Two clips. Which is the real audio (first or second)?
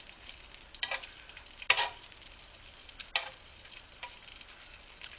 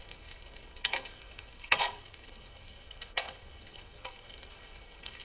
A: first